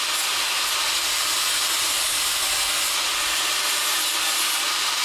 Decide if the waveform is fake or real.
fake